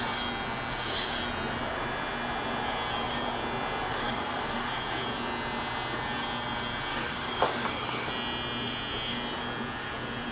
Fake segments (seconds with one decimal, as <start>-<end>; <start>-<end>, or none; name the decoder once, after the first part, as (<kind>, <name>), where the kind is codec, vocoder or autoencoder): 3.9-4.7 (codec, DAC); 6.9-8.1